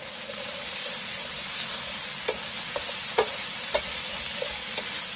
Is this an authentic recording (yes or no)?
yes